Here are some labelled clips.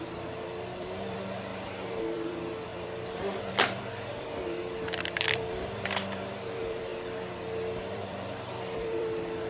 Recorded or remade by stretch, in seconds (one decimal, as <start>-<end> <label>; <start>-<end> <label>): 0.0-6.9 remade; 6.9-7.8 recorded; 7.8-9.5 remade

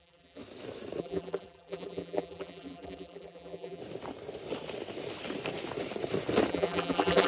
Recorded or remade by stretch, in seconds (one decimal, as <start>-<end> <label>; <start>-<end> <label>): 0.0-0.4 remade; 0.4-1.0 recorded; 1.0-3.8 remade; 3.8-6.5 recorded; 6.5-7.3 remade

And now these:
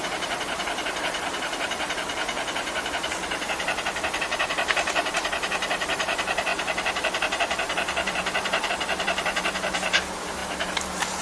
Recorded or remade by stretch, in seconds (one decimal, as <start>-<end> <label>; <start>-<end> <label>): 0.0-11.2 remade